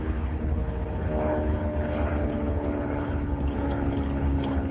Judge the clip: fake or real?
fake